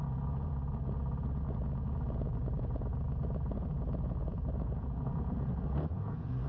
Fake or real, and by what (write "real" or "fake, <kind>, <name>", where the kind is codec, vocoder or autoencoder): fake, vocoder, Vocos